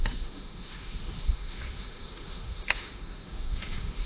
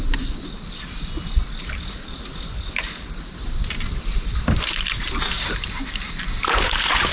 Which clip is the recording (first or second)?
second